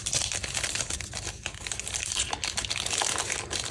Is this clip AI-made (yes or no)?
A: no